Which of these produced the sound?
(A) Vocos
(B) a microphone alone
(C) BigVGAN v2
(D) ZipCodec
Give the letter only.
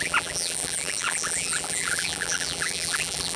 C